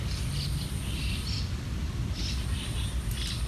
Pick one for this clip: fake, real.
real